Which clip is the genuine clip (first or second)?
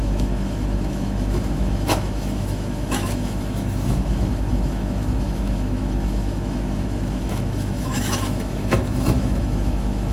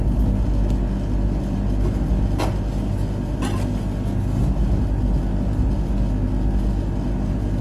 second